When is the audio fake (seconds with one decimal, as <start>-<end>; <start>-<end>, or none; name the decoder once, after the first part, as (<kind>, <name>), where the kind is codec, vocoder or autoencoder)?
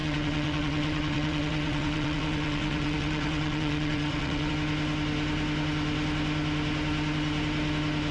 0.0-4.5 (vocoder, WaveNeXt)